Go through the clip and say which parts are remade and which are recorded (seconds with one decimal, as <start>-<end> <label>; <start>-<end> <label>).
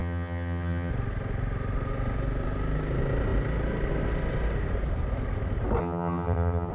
0.0-0.9 remade; 0.9-5.8 recorded; 5.8-6.7 remade